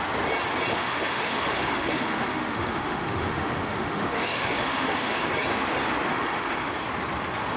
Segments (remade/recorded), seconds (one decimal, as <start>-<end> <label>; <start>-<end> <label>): 0.0-0.7 recorded; 0.7-5.3 remade; 5.3-6.1 recorded; 6.1-6.7 remade; 6.7-7.6 recorded